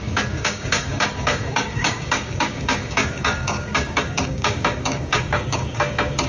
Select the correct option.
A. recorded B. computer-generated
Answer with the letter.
B